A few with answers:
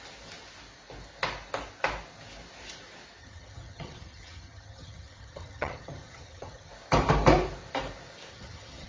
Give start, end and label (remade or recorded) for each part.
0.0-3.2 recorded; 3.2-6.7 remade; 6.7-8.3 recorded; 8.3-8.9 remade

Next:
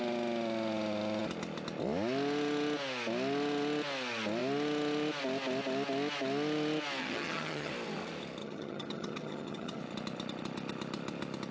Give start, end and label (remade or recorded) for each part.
0.0-7.0 recorded; 7.0-7.7 remade; 7.7-8.4 recorded; 8.4-9.8 remade; 9.8-11.5 recorded